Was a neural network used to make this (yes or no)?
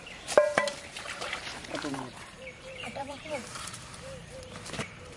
yes